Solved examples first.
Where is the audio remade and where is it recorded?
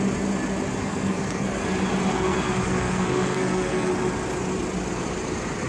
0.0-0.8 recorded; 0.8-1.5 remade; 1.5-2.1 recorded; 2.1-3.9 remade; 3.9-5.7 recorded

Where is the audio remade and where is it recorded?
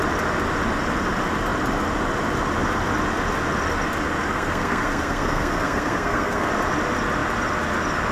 0.0-4.3 recorded; 4.3-6.5 remade; 6.5-8.1 recorded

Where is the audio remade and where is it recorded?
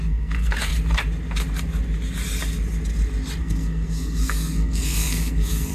0.0-0.7 remade; 0.7-3.4 recorded; 3.4-5.7 remade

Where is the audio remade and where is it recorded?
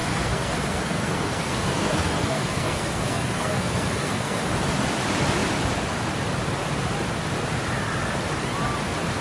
0.0-4.4 remade; 4.4-9.2 recorded